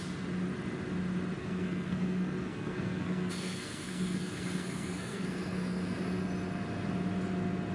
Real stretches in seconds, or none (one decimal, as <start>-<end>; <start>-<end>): 0.0-1.4; 6.0-7.7